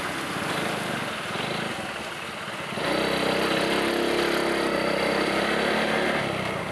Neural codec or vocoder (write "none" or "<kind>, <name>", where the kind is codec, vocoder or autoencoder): none